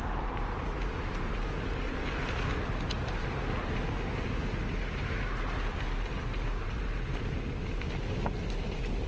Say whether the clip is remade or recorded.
recorded